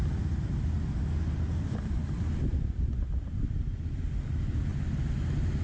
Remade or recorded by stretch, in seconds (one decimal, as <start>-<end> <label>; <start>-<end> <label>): 0.0-5.6 recorded